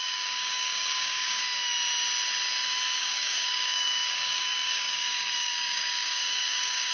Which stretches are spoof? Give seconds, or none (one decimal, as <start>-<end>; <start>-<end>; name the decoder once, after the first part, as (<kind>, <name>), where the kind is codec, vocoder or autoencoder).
0.0-1.4 (codec, DAC); 3.0-6.9